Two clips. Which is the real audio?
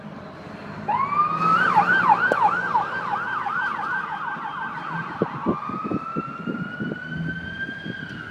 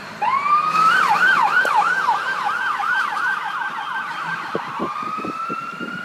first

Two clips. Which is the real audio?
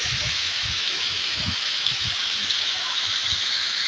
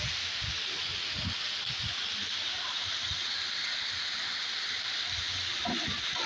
second